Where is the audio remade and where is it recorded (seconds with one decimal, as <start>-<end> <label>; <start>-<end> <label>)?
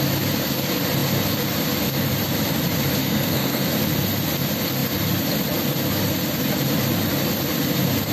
0.0-3.0 recorded; 3.0-3.7 remade; 3.7-8.1 recorded